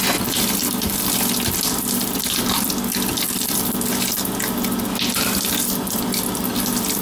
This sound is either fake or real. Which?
real